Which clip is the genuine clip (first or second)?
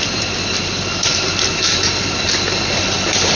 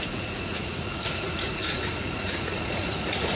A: first